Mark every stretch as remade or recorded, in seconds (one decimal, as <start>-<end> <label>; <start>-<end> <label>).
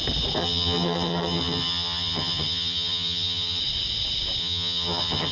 0.0-0.4 recorded; 0.4-3.6 remade; 3.6-4.4 recorded; 4.4-5.3 remade